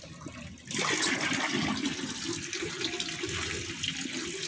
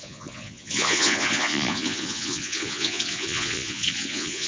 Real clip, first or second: first